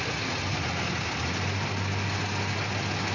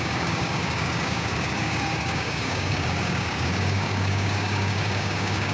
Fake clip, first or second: second